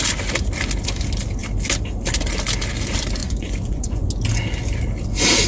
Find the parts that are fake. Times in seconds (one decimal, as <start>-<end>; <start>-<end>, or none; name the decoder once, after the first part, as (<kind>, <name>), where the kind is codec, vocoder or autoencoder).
3.2-4.1 (vocoder, Vocos)